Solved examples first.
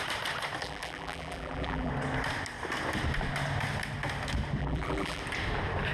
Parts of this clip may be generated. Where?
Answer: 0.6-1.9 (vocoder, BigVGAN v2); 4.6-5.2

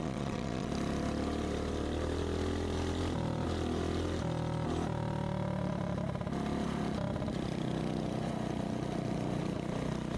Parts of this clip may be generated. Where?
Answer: 0.0-0.7 (vocoder, Vocos)

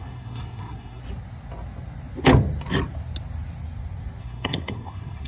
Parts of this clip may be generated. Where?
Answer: 0.0-1.0 (codec, SNAC); 4.2-5.3

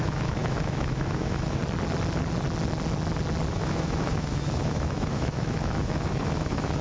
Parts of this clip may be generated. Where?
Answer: 0.0-1.6 (autoencoder, DAC-VAE); 3.5-6.8

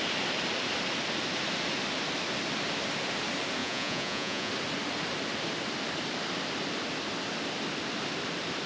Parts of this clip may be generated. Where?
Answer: 3.6-4.5 (vocoder, Vocos)